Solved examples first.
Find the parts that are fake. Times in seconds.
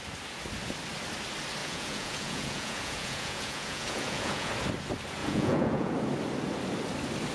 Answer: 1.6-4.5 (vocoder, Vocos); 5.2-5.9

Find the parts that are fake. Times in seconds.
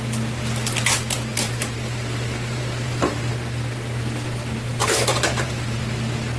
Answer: 1.3-3.3 (vocoder, BigVGAN v2); 4.7-5.8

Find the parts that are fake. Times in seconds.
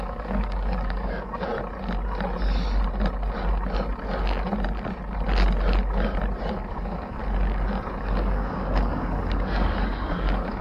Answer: 0.0-1.5 (codec, DAC); 6.5-7.2; 8.0-10.6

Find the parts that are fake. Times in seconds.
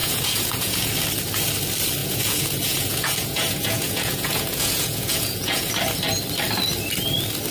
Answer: 0.0-0.9 (vocoder, Vocos); 2.0-5.7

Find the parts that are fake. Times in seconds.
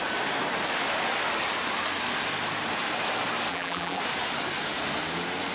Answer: 3.5-4.0 (vocoder, BigVGAN v2)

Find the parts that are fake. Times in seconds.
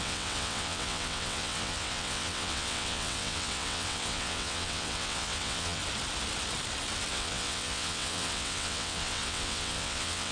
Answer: 0.0-5.8 (vocoder, WaveNeXt); 7.1-10.3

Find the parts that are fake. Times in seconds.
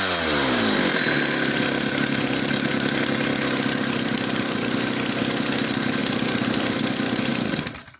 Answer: 6.0-6.8 (vocoder, BigVGAN v2); 7.3-8.0